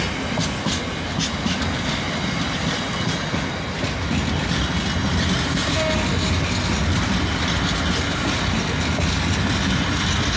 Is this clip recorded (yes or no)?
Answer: yes